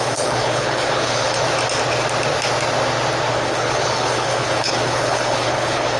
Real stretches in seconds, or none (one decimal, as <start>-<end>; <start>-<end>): 1.4-3.3